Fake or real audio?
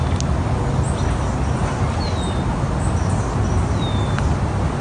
real